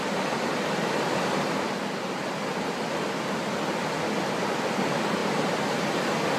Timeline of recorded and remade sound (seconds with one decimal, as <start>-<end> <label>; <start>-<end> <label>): 0.0-6.4 recorded